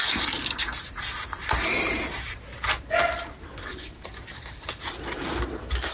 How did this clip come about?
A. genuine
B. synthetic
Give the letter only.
A